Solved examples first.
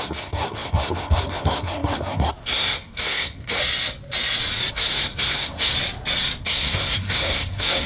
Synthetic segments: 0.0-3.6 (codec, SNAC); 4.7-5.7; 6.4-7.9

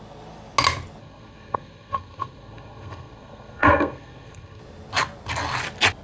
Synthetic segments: 1.0-4.6 (codec, SNAC)

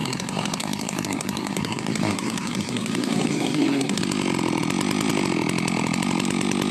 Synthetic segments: 0.0-4.0 (codec, SNAC)